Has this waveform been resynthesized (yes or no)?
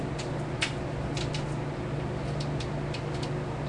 no